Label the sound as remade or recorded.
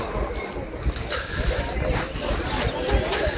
recorded